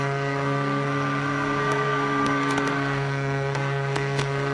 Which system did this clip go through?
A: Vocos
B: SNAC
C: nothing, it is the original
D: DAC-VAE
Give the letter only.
B